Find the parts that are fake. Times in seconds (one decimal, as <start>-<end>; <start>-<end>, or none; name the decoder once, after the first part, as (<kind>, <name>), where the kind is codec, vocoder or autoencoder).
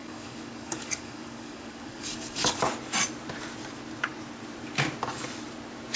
0.0-2.6 (codec, DAC)